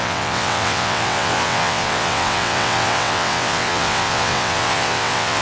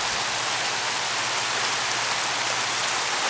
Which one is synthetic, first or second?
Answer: first